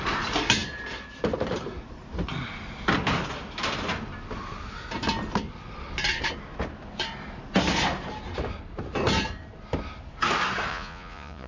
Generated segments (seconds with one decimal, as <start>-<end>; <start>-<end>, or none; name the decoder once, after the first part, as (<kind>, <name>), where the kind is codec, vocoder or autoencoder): 10.7-11.5 (vocoder, Vocos)